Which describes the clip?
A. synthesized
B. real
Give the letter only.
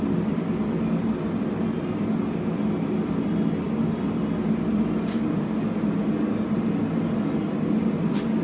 B